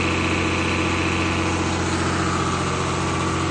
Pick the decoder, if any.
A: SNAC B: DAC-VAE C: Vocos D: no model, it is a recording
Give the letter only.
D